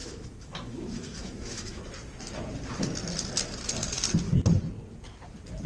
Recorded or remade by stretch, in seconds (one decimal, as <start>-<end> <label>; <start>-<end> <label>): 0.0-1.8 remade; 1.8-5.7 recorded